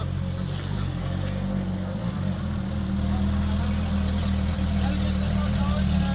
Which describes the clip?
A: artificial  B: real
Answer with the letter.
B